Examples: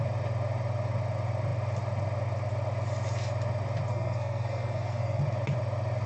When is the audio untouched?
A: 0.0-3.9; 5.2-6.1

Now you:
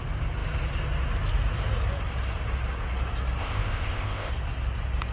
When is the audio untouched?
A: 0.0-3.4; 4.3-5.1